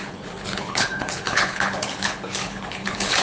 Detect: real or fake fake